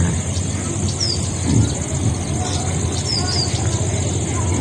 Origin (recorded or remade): recorded